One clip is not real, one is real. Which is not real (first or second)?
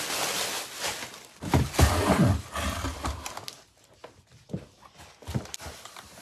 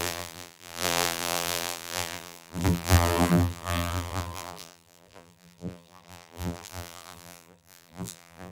second